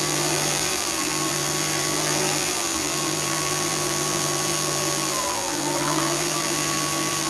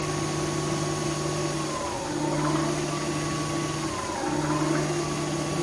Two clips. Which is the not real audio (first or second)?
first